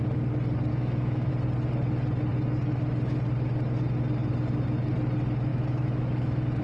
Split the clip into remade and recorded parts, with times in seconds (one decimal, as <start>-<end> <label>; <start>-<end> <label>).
0.0-0.7 recorded; 0.7-1.3 remade; 1.3-5.5 recorded; 5.5-6.6 remade